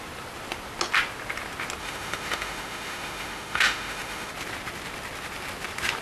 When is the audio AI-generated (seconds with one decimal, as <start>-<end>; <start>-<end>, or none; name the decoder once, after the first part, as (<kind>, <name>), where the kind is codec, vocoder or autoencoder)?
1.8-4.3 (autoencoder, DAC-VAE)